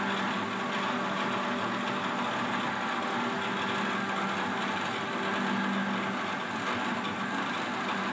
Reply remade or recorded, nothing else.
recorded